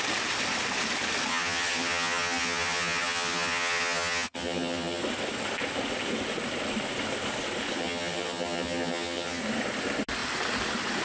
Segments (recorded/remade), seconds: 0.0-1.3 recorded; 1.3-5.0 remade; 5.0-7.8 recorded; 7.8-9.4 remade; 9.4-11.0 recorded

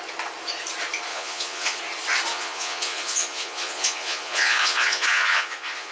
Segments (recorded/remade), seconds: 0.0-1.1 recorded; 1.1-1.8 remade; 1.8-2.3 recorded; 2.3-5.9 remade